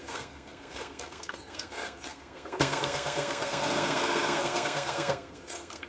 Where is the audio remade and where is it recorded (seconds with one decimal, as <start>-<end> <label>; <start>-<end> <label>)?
0.0-5.9 remade